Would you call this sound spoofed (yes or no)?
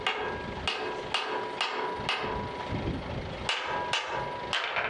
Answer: no